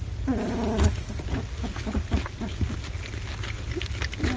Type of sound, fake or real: real